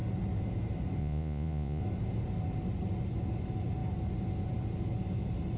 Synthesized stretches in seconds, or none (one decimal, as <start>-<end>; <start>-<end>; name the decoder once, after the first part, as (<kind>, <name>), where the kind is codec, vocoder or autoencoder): 1.0-1.8 (vocoder, Vocos)